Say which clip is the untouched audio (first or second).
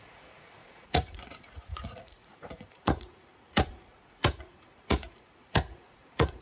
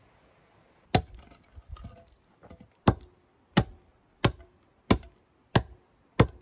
second